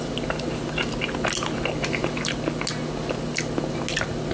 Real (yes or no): yes